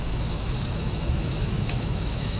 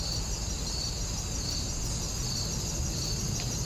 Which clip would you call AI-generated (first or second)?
first